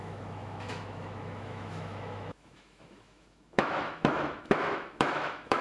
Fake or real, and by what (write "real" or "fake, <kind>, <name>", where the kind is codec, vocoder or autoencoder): fake, autoencoder, DAC-VAE